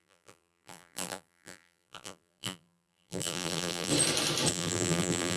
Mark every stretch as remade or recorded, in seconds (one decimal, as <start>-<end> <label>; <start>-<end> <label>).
0.0-3.9 remade; 3.9-4.5 recorded; 4.5-5.4 remade